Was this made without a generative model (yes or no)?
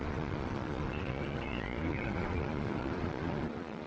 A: no